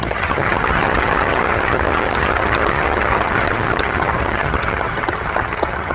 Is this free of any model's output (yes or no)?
no